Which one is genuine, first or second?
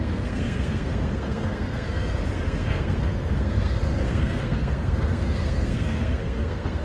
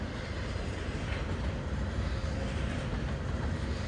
second